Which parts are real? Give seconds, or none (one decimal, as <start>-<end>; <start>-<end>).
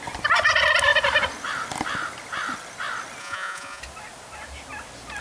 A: 0.0-3.2; 3.8-5.2